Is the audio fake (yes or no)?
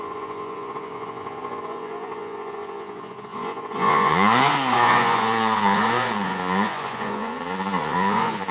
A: yes